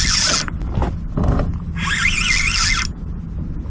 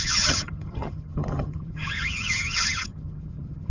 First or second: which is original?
first